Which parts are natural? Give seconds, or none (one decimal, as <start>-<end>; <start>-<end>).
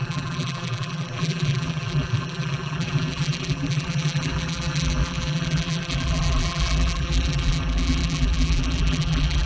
none